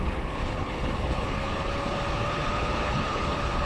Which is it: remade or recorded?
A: remade